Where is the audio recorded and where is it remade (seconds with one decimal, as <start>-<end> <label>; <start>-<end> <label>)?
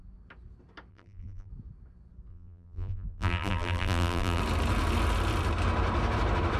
0.0-0.9 recorded; 0.9-1.5 remade; 1.5-2.3 recorded; 2.3-4.4 remade; 4.4-6.6 recorded